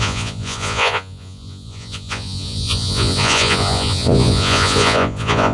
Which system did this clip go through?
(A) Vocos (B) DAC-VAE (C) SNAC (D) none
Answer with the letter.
A